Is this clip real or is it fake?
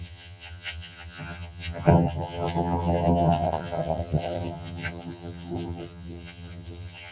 fake